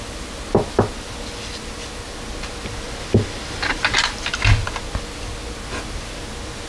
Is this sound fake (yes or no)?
no